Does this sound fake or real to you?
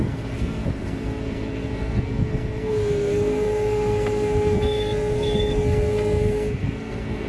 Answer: fake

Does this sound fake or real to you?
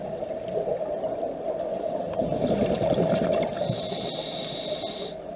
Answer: real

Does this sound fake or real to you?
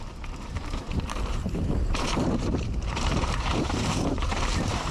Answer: fake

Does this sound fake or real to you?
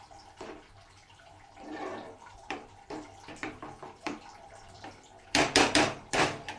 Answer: fake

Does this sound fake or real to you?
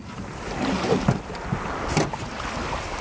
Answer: real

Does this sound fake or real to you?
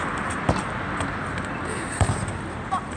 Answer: real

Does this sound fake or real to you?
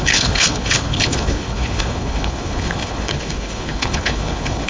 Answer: fake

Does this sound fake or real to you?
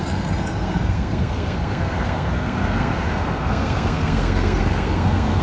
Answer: fake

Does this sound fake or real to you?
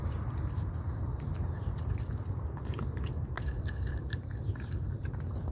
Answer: fake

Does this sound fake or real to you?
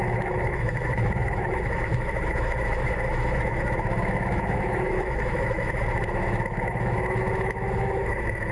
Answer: fake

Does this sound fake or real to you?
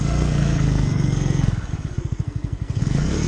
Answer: fake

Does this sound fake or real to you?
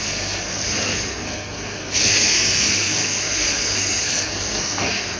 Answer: fake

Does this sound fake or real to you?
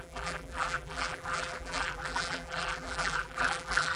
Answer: fake